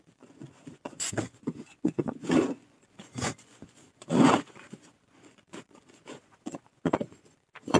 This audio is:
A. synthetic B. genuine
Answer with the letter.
A